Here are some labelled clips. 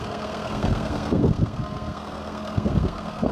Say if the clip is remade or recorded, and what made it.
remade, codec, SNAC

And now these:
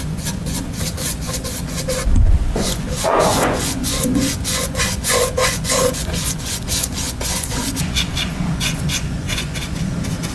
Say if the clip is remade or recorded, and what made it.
remade, vocoder, Vocos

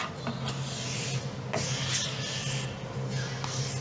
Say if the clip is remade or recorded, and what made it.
recorded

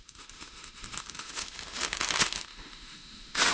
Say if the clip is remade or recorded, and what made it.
remade, autoencoder, DAC-VAE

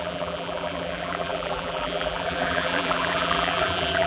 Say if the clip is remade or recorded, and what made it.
remade, vocoder, BigVGAN v2